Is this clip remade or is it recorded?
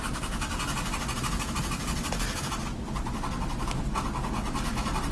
recorded